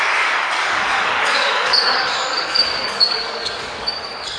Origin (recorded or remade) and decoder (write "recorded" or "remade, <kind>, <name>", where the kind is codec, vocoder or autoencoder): remade, codec, DAC